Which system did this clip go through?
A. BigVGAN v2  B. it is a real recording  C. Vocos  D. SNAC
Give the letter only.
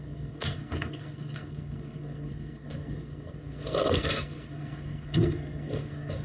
D